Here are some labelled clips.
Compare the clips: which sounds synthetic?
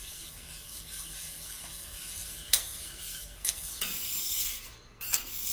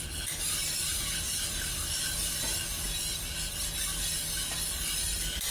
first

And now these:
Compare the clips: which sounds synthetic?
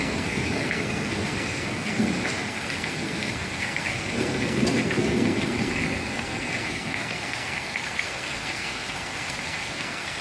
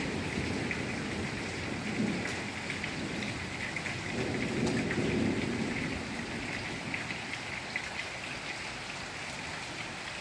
first